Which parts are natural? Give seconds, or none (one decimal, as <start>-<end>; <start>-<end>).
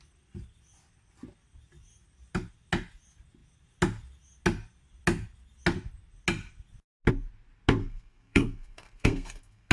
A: 0.0-7.8